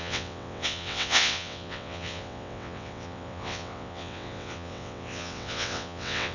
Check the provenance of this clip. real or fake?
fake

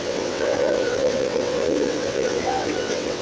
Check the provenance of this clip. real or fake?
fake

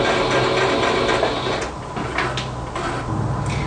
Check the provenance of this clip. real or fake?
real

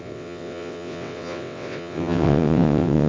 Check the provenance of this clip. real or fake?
fake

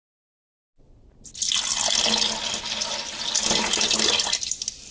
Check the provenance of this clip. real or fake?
real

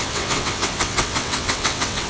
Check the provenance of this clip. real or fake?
fake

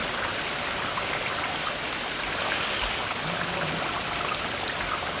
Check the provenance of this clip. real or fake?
real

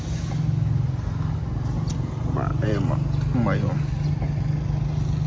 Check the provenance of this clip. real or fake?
real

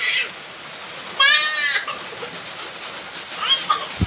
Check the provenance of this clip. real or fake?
real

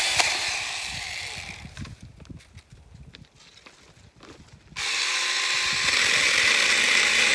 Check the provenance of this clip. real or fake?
real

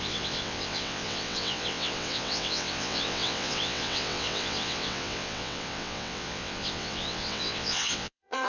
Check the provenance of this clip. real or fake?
fake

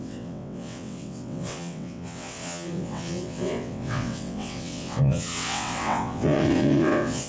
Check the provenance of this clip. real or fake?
fake